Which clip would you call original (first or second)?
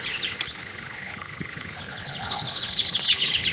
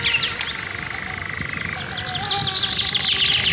second